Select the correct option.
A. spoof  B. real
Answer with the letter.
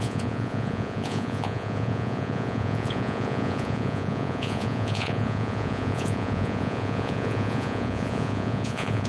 A